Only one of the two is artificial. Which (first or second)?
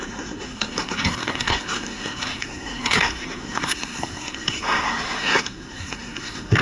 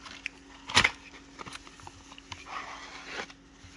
first